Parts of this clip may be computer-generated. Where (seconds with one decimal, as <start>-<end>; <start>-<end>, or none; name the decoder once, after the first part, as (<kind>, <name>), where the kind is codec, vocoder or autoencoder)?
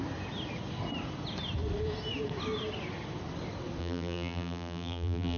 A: 3.8-5.4 (vocoder, BigVGAN v2)